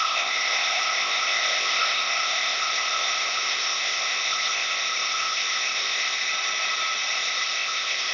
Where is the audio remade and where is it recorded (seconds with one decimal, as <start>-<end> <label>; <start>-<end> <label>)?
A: 0.0-6.3 remade; 6.3-7.1 recorded; 7.1-8.1 remade